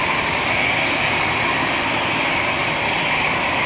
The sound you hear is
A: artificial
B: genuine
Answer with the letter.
B